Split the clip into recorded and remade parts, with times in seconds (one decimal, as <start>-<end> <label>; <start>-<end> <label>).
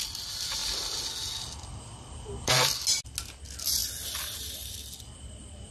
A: 0.0-5.7 recorded